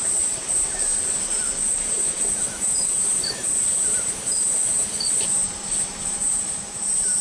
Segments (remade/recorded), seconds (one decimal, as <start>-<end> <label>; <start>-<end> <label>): 0.0-0.9 remade; 0.9-1.8 recorded; 1.8-7.2 remade